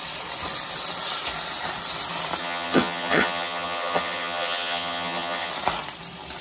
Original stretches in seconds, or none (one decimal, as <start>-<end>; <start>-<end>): 0.0-2.4; 5.5-6.4